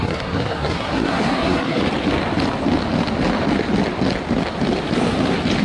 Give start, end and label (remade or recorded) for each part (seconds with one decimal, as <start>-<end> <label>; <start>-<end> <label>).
0.0-1.8 remade; 1.8-5.6 recorded